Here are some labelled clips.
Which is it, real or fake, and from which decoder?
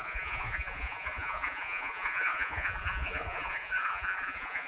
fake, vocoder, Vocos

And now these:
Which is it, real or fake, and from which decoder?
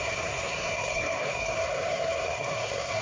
fake, codec, SNAC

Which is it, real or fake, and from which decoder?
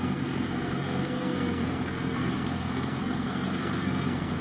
fake, codec, SNAC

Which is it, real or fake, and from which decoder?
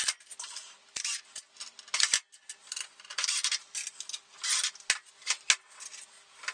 real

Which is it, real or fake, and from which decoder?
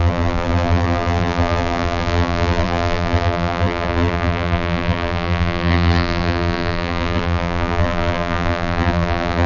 fake, vocoder, BigVGAN v2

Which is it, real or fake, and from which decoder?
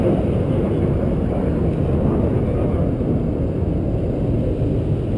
real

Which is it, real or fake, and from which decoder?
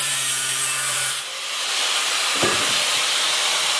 fake, vocoder, BigVGAN v2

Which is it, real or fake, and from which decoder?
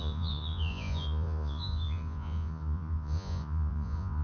fake, vocoder, Vocos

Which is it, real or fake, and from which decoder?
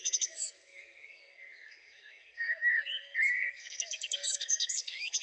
fake, codec, SNAC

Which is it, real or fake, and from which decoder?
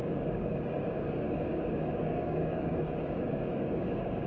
fake, codec, DAC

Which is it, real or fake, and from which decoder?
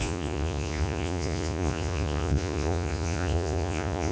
fake, vocoder, Vocos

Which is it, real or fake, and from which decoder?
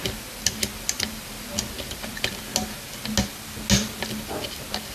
real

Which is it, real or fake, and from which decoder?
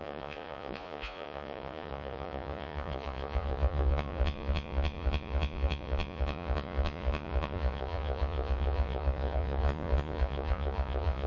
fake, vocoder, Vocos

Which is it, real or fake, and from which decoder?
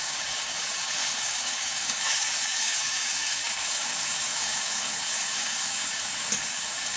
fake, codec, DAC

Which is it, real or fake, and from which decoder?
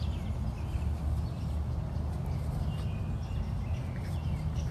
real